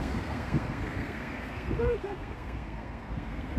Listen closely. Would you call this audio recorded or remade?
remade